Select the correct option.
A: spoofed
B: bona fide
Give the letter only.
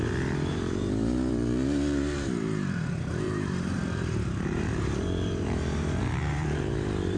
A